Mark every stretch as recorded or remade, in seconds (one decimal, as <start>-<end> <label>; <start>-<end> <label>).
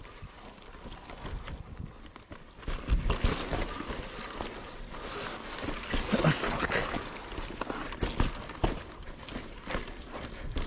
0.0-10.7 recorded